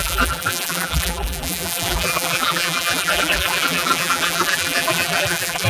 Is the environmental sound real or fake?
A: fake